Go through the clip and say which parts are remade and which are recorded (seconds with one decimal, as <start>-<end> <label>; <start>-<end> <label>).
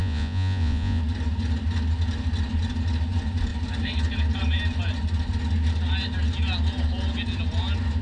0.0-1.0 remade; 1.0-8.0 recorded